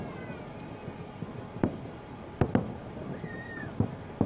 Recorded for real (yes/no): yes